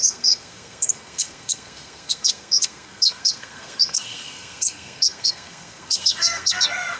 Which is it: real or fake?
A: fake